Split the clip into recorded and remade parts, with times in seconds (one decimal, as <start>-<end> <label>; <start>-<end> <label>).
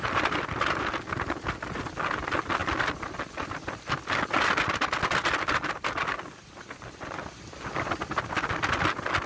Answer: 0.0-9.3 recorded